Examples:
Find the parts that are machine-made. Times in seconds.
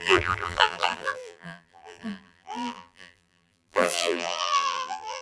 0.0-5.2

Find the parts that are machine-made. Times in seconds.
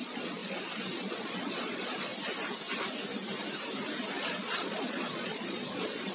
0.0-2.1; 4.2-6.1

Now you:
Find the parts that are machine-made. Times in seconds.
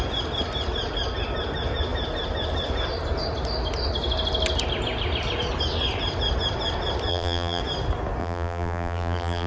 7.1-7.6; 8.2-9.5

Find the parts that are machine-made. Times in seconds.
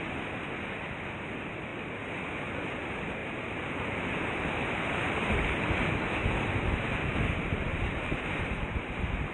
3.2-4.8; 7.7-8.6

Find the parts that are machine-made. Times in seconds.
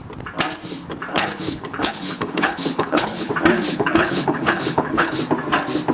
1.1-3.3; 3.7-5.2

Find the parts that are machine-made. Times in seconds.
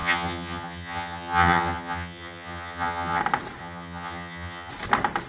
0.0-3.2; 3.6-4.7